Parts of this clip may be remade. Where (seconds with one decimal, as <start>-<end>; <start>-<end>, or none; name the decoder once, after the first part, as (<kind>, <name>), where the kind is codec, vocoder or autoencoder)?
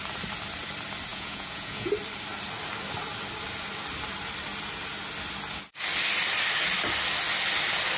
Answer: 1.1-1.9 (vocoder, Vocos)